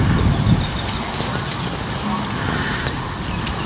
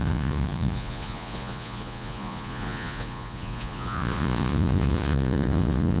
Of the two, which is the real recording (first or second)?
first